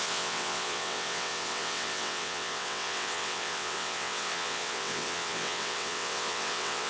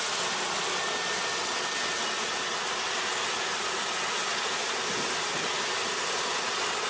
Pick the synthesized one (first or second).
first